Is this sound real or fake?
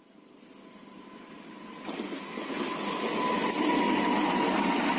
real